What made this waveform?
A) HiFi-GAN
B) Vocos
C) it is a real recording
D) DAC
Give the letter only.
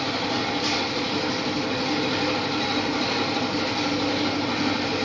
C